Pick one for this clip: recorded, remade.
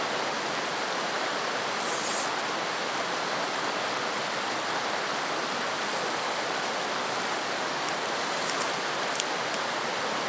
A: recorded